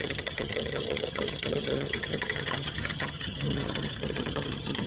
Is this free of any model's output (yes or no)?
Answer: no